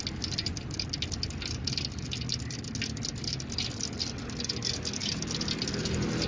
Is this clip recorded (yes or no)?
yes